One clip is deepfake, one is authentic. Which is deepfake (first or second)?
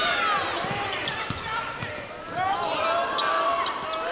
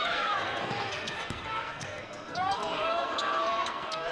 second